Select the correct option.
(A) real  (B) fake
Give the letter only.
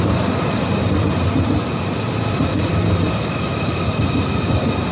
A